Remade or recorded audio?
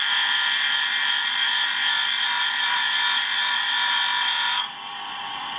remade